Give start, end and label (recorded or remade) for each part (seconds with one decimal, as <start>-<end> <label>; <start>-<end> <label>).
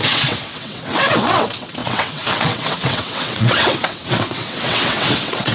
0.0-5.5 remade